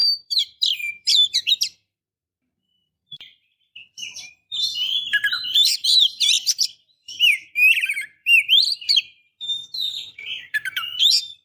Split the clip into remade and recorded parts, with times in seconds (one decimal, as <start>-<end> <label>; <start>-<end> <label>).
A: 0.0-11.4 remade